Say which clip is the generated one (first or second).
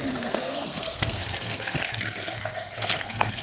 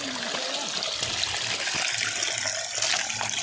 first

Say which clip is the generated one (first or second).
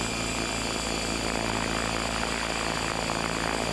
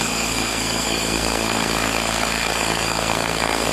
second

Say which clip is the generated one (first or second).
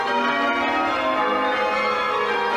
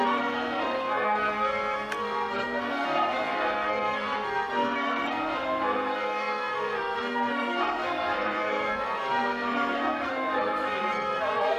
second